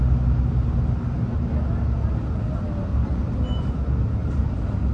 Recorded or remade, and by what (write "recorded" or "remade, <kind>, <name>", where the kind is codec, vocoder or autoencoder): recorded